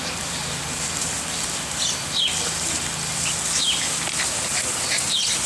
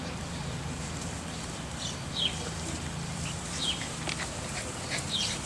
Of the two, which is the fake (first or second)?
second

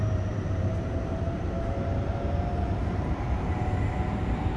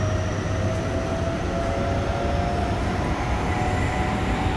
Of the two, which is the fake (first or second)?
first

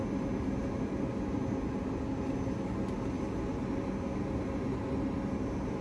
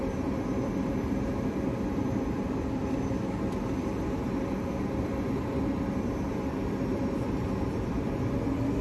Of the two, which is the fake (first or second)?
second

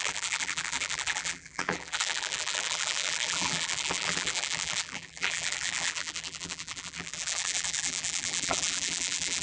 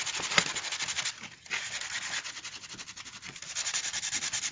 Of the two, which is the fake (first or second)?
first